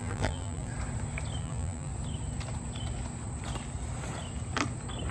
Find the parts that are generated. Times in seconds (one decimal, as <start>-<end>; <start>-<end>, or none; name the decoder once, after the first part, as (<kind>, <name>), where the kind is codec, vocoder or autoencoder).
0.0-0.7 (vocoder, BigVGAN v2); 1.4-1.9